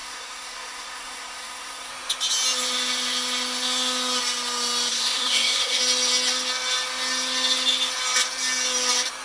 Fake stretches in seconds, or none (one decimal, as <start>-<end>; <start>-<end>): 0.0-1.9; 4.9-5.8